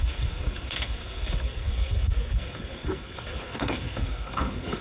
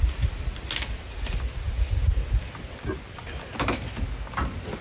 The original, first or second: second